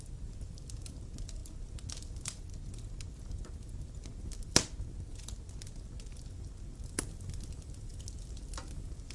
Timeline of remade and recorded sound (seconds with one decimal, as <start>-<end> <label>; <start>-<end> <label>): 0.0-9.1 recorded